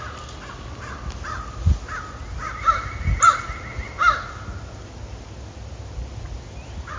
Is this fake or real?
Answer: real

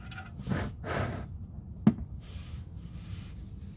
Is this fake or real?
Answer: real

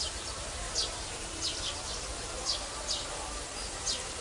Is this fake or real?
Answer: fake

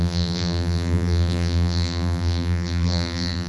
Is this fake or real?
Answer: fake